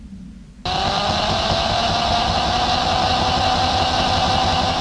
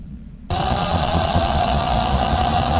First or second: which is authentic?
first